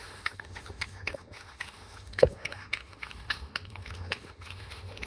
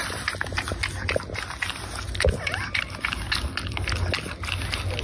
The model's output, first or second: first